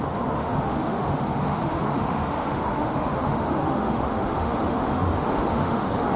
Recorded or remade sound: remade